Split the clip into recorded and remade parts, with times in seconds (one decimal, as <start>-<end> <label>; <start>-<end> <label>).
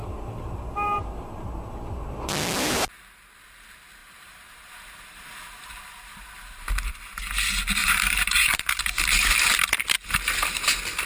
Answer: 0.0-1.1 remade; 1.1-4.0 recorded; 4.0-7.0 remade; 7.0-7.8 recorded; 7.8-8.7 remade; 8.7-11.1 recorded